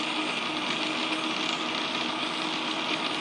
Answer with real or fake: real